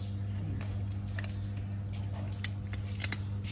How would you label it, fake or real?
real